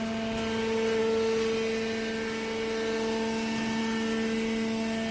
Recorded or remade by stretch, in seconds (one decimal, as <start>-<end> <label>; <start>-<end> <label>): 0.0-5.1 recorded